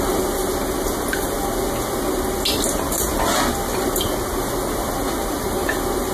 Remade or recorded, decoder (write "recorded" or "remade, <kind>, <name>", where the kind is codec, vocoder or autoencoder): recorded